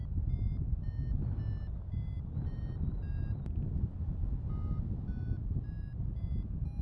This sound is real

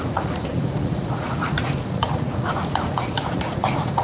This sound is fake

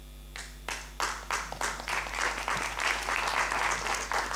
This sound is real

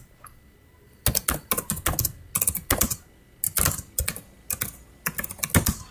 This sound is real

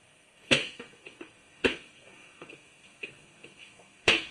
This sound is fake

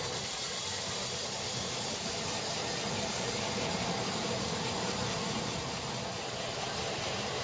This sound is fake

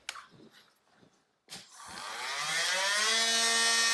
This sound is real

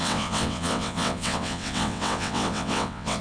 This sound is fake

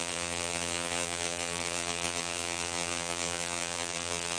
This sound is fake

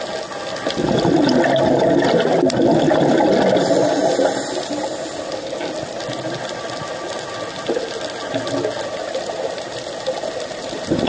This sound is real